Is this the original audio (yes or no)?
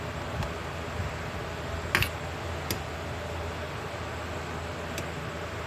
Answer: yes